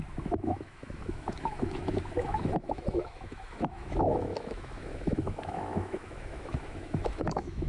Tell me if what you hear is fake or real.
fake